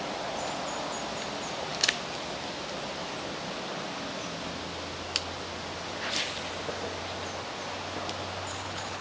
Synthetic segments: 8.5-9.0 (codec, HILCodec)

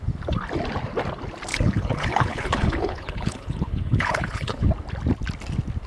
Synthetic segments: 1.5-4.7 (codec, HILCodec)